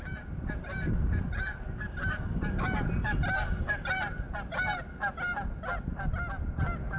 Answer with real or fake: real